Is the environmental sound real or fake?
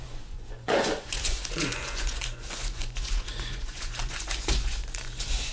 fake